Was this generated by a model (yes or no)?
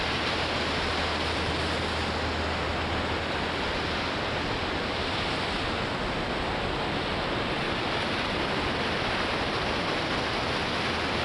no